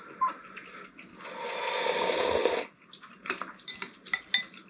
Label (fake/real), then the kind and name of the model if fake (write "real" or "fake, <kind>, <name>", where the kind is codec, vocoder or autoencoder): real